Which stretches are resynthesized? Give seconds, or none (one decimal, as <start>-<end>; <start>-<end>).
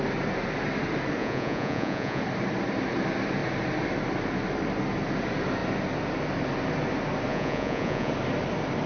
1.2-2.2; 7.3-8.1